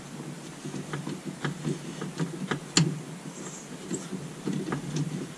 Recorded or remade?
recorded